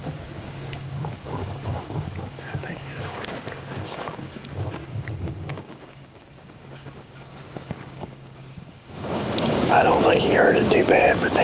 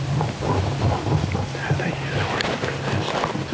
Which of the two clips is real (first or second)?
second